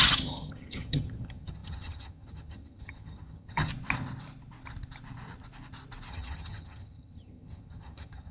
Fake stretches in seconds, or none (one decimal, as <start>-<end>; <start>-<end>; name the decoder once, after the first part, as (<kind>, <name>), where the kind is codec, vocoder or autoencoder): 0.0-3.7 (vocoder, HiFi-GAN); 6.1-8.3